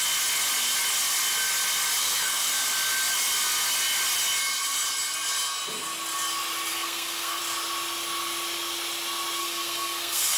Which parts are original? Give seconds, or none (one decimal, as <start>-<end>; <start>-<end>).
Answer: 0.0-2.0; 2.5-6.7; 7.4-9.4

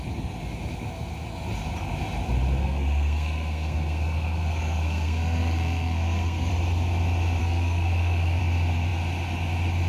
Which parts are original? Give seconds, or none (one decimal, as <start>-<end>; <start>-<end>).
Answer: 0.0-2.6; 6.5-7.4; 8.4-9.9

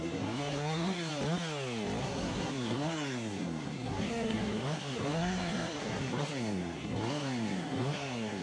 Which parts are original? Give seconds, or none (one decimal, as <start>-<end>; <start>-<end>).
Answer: 1.1-2.0